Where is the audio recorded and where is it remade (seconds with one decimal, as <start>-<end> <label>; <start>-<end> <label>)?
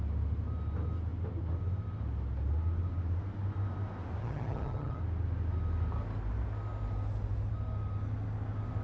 0.0-4.2 recorded; 4.2-5.0 remade; 5.0-8.8 recorded